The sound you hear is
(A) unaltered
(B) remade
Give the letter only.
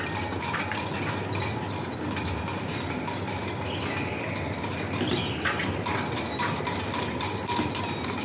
A